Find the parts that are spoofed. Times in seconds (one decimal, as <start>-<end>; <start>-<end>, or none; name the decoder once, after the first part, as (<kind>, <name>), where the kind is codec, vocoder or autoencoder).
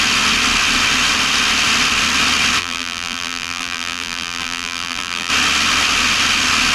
2.6-5.3 (vocoder, BigVGAN v2)